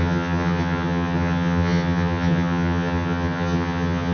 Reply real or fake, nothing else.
fake